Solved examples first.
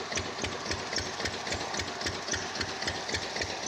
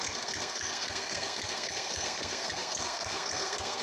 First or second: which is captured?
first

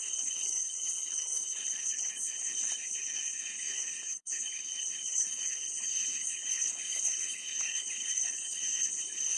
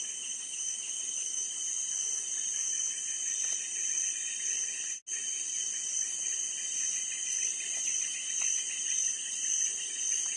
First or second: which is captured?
second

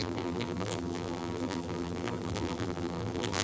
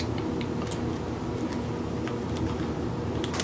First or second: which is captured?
second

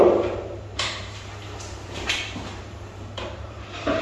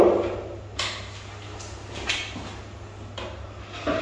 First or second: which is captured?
second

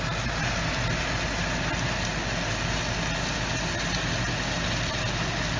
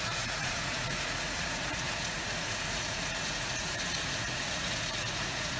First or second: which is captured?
first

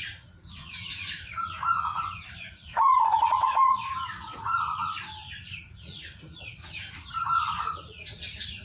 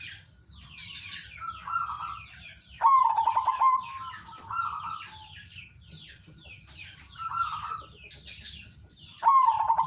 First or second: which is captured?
second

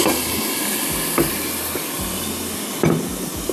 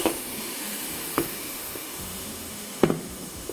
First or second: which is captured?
first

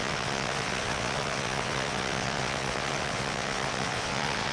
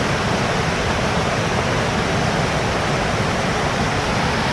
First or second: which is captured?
second